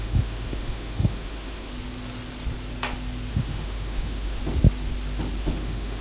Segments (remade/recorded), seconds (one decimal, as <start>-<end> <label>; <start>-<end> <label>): 0.0-1.7 remade; 1.7-3.3 recorded; 3.3-4.4 remade; 4.4-5.4 recorded; 5.4-6.0 remade